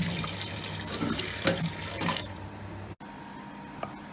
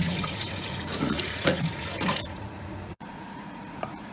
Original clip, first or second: first